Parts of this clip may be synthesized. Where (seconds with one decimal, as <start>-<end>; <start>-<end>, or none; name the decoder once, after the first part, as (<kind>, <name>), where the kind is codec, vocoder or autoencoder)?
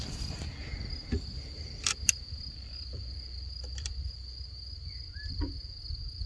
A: none